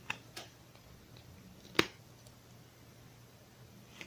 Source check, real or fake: real